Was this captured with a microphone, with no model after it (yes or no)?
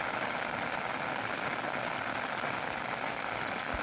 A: yes